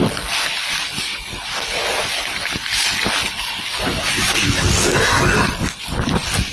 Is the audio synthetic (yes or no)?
no